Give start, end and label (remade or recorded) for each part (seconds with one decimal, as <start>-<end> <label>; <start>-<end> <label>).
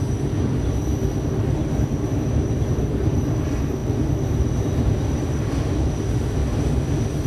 0.0-0.9 remade; 0.9-1.9 recorded; 1.9-6.4 remade; 6.4-7.3 recorded